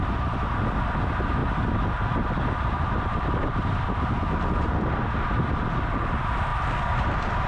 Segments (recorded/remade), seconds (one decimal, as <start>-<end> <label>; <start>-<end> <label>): 0.0-7.5 recorded